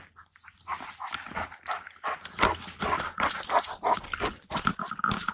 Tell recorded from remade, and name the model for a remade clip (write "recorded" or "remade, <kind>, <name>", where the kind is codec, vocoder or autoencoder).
recorded